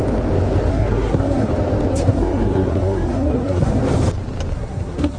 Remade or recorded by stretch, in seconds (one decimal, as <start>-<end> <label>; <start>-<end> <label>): 0.0-0.7 recorded; 0.7-1.5 remade; 1.5-1.9 recorded; 1.9-3.8 remade; 3.8-4.5 recorded; 4.5-5.2 remade